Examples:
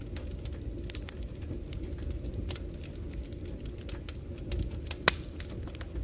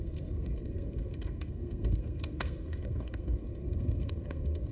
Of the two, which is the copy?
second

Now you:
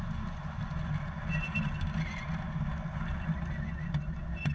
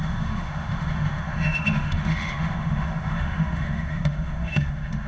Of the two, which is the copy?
second